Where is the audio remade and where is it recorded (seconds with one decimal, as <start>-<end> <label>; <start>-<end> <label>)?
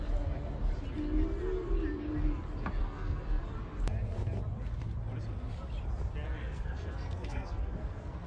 0.0-2.8 recorded; 2.8-3.4 remade; 3.4-6.4 recorded; 6.4-8.3 remade